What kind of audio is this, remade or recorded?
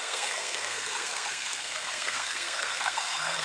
remade